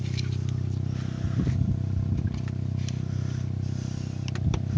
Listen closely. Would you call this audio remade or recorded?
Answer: recorded